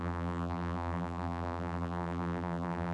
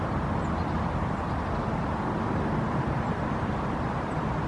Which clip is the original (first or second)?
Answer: second